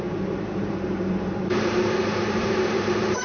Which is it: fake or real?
fake